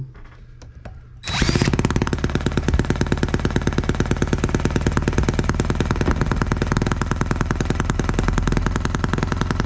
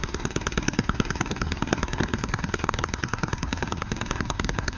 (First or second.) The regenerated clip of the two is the second